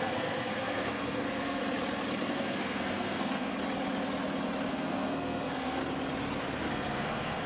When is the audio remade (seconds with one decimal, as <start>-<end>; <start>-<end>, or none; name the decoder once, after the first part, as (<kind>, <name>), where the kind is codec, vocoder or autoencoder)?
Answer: 0.0-1.6 (codec, SNAC); 2.3-3.5; 4.7-5.8; 6.7-7.5